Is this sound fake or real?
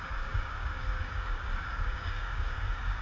fake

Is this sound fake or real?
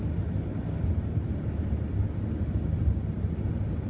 real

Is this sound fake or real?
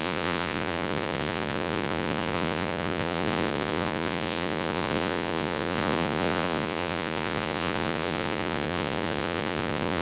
fake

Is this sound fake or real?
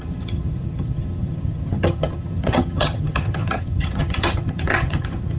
fake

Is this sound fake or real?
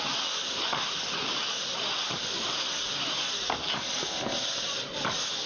real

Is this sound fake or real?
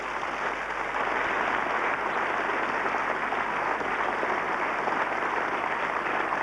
real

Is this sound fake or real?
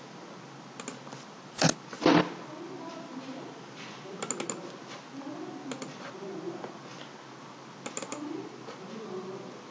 real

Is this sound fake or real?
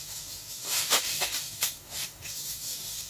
fake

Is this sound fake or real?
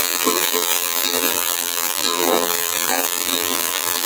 fake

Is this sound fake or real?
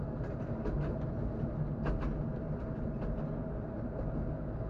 real